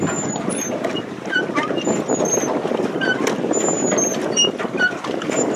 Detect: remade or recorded recorded